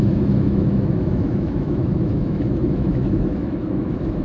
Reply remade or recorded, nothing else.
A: remade